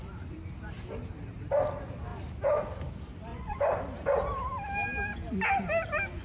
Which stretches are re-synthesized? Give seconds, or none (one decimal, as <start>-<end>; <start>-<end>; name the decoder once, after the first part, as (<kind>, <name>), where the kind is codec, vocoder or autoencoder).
3.3-3.8 (vocoder, Vocos)